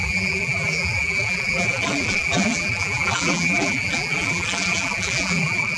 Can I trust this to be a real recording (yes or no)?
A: no